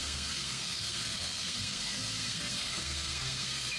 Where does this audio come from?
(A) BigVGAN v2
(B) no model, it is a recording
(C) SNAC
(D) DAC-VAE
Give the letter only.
C